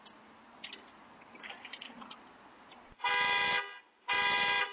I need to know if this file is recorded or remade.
recorded